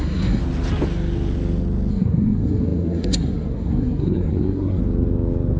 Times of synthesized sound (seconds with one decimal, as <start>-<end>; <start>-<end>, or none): 0.0-0.4; 1.9-4.8